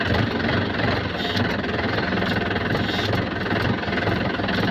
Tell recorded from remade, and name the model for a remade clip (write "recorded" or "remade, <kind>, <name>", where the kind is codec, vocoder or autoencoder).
remade, vocoder, BigVGAN v2